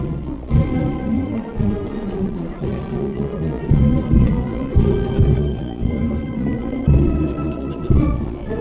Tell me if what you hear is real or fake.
fake